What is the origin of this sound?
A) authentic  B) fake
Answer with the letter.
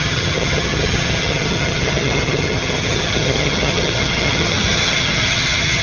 B